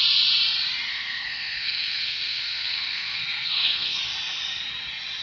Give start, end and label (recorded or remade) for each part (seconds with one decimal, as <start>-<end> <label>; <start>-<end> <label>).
0.0-0.9 recorded; 0.9-4.0 remade; 4.0-5.2 recorded